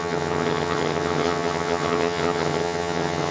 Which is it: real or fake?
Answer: fake